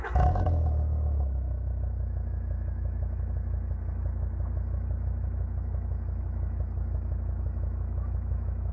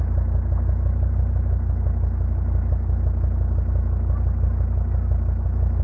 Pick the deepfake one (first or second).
first